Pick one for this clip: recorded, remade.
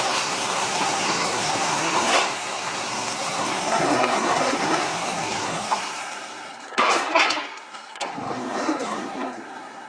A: remade